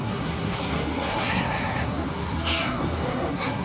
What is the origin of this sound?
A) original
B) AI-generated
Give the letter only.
B